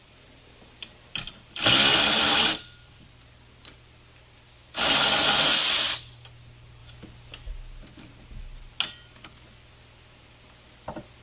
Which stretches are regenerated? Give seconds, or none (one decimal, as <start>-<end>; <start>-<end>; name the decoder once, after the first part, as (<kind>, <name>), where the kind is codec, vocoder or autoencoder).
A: 0.0-3.1 (vocoder, BigVGAN v2)